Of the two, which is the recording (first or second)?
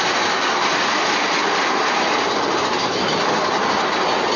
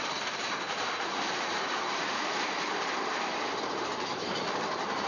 first